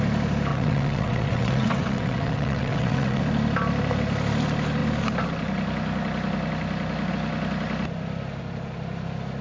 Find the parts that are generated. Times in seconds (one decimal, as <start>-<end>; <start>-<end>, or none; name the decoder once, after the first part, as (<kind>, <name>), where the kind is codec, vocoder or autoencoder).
0.5-3.2 (vocoder, WaveNeXt)